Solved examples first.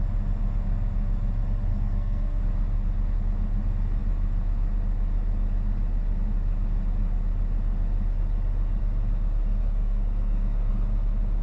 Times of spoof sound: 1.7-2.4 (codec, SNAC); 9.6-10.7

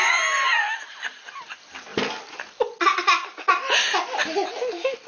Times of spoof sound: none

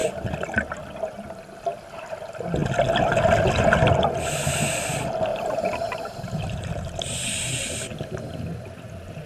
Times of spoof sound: 0.0-0.8 (vocoder, BigVGAN v2); 5.3-6.7

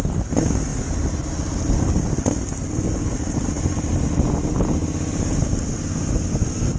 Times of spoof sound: none

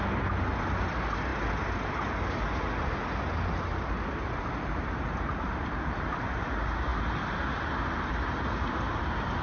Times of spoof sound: 3.7-4.4 (vocoder, BigVGAN v2)

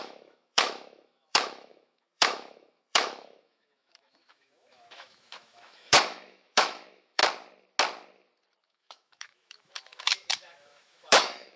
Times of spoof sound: 0.0-7.2 (autoencoder, DAC-VAE); 8.6-11.6